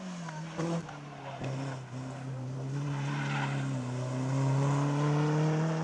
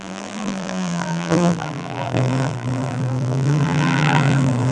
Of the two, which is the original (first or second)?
first